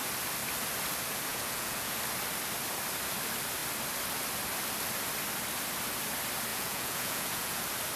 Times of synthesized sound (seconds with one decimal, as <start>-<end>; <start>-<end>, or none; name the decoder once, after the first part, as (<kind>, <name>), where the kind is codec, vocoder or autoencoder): 1.3-2.0 (vocoder, Vocos); 6.5-7.6